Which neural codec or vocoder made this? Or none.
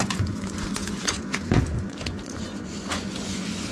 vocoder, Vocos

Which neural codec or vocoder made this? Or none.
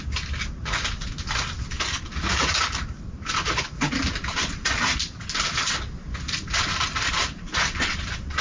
none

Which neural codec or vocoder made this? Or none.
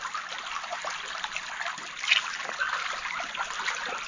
none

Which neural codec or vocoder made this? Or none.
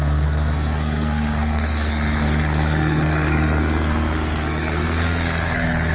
codec, SNAC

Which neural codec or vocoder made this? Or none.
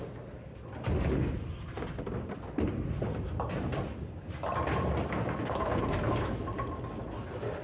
none